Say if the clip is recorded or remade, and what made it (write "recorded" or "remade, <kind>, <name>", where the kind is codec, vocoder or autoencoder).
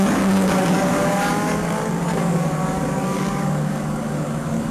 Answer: remade, codec, DAC